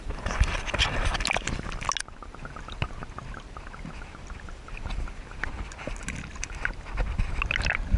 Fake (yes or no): no